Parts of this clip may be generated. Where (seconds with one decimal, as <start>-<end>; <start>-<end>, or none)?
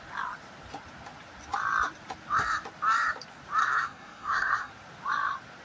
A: 3.6-4.7